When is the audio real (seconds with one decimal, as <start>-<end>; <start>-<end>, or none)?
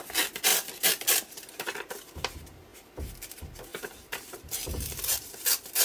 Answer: 0.0-3.7; 5.3-5.8